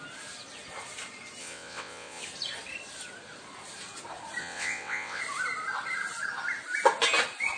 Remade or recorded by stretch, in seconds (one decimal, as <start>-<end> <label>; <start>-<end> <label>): 0.0-1.4 recorded; 1.4-2.2 remade; 2.2-4.4 recorded; 4.4-5.2 remade; 5.2-7.6 recorded